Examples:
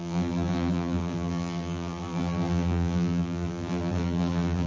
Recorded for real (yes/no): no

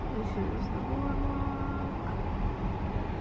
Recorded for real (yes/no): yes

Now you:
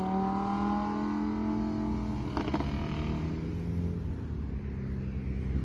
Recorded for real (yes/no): yes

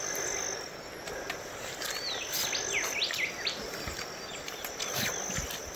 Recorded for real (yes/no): yes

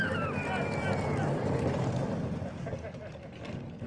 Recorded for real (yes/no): yes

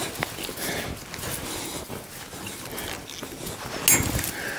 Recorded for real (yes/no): yes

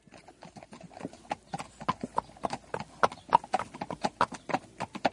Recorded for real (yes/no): yes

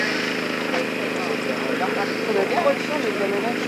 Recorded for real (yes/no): yes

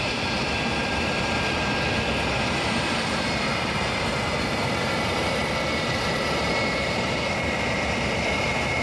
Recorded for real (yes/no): no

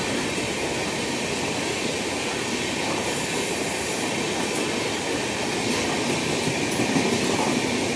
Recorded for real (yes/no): yes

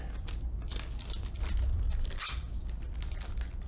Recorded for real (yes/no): yes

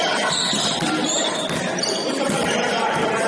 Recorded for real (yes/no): yes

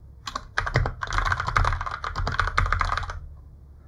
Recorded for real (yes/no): yes